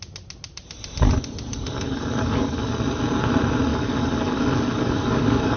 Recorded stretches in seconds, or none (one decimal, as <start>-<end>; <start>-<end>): 0.0-1.5; 2.7-3.7